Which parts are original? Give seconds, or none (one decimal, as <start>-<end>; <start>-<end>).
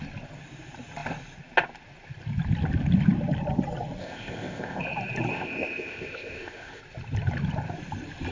0.0-4.0; 4.8-5.3; 6.8-8.3